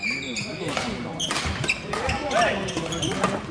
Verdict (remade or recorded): recorded